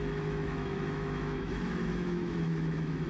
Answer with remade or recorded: remade